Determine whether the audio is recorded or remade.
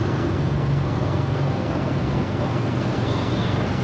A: remade